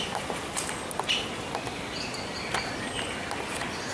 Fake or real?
real